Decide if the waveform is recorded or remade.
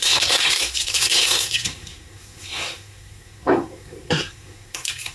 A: remade